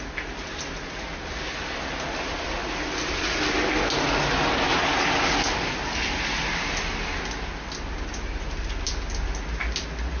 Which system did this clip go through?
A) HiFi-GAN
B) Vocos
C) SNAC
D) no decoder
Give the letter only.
D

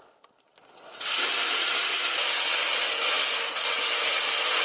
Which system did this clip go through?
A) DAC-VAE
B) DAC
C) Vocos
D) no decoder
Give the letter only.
D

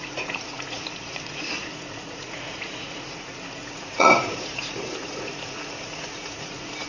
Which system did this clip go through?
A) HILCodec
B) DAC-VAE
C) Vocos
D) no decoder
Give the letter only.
C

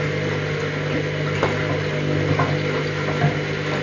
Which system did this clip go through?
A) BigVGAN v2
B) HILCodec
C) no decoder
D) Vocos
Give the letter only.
C